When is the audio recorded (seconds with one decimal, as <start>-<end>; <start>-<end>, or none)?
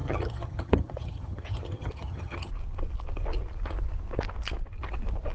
2.5-5.3